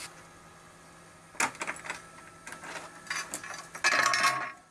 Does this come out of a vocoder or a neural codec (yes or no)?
no